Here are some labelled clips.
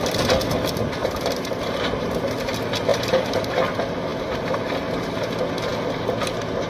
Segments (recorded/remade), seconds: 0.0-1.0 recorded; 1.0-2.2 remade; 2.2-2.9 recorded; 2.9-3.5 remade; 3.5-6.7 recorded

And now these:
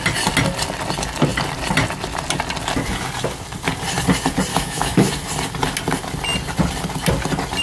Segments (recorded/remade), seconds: 0.0-4.5 recorded; 4.5-5.1 remade; 5.1-7.6 recorded

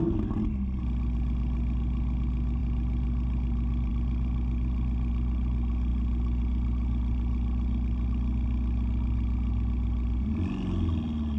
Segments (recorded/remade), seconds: 0.0-11.4 recorded

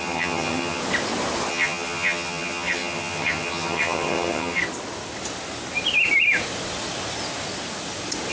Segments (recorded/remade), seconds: 0.0-0.8 remade; 0.8-1.5 recorded; 1.5-4.6 remade; 4.6-8.3 recorded

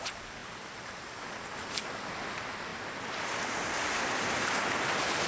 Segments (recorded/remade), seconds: 0.0-5.3 recorded

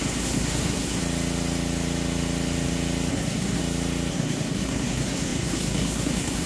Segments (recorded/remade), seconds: 0.0-1.0 remade; 1.0-3.1 recorded; 3.1-3.6 remade; 3.6-4.1 recorded; 4.1-6.5 remade

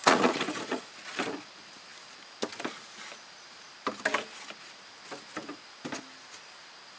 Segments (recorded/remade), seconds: 0.0-0.8 remade; 0.8-7.0 recorded

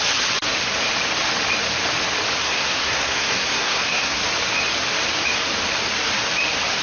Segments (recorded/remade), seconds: 0.0-2.4 recorded; 2.4-4.2 remade; 4.2-6.8 recorded